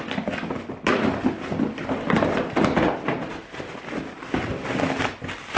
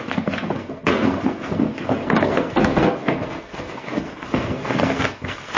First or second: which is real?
first